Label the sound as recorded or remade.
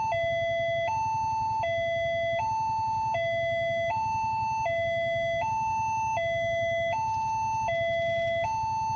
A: recorded